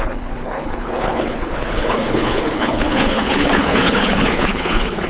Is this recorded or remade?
remade